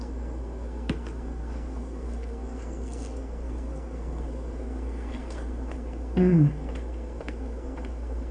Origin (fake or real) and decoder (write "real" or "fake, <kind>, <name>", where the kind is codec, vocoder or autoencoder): fake, codec, SNAC